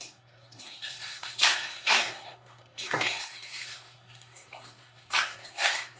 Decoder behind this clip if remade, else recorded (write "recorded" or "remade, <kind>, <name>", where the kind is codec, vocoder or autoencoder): remade, codec, SNAC